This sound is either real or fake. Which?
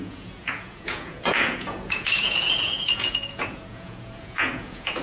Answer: fake